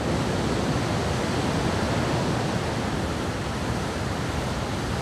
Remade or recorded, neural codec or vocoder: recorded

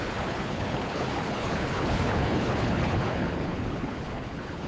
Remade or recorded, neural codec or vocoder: remade, codec, HILCodec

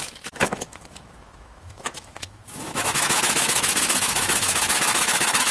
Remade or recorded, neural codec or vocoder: remade, autoencoder, DAC-VAE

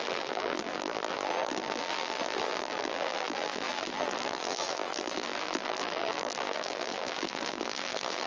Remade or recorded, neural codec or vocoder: remade, vocoder, BigVGAN v2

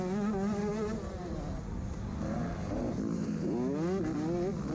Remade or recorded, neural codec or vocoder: recorded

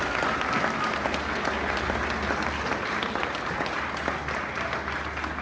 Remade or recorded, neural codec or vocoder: recorded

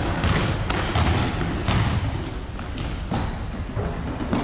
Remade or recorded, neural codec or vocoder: recorded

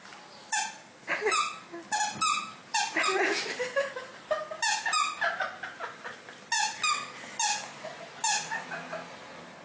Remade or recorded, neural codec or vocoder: recorded